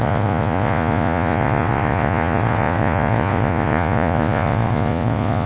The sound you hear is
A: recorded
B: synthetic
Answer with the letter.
B